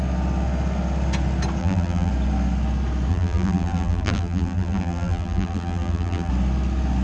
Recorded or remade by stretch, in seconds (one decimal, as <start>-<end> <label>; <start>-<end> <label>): 0.0-1.6 recorded; 1.6-2.1 remade; 2.1-3.1 recorded; 3.1-6.3 remade; 6.3-7.0 recorded